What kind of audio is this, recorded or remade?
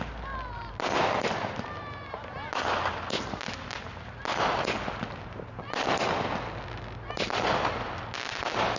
recorded